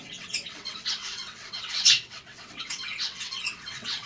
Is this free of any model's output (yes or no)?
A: no